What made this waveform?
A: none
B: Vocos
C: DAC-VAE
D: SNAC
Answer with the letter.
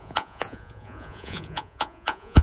B